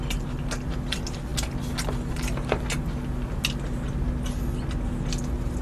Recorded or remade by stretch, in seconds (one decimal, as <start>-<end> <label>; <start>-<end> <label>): 0.0-5.6 recorded